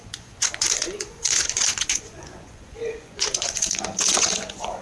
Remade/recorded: remade